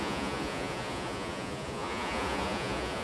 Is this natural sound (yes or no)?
no